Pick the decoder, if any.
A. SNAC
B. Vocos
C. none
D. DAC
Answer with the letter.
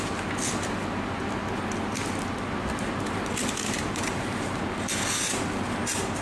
C